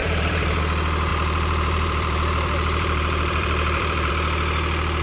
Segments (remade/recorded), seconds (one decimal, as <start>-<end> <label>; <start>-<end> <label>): 0.0-0.6 remade; 0.6-1.1 recorded; 1.1-4.1 remade; 4.1-5.0 recorded